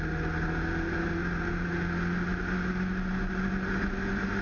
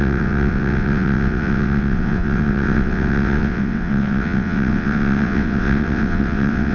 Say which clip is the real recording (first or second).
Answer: first